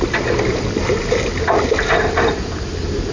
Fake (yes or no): no